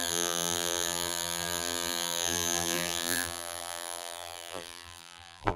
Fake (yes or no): yes